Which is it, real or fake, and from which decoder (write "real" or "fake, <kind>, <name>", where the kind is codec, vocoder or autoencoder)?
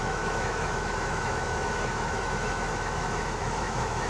fake, autoencoder, DAC-VAE